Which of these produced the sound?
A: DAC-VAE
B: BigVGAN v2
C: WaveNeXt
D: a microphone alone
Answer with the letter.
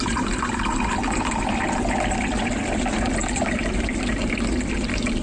D